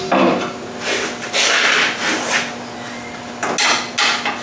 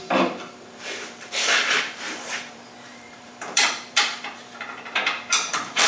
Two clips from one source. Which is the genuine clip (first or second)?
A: first